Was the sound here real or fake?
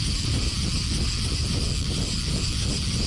real